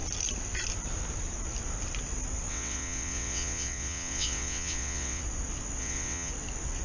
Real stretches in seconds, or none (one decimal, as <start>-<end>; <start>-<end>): 0.0-2.5; 5.2-5.8; 6.3-6.8